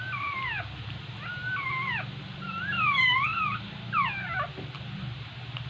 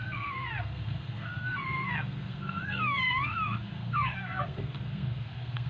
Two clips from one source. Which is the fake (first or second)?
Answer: second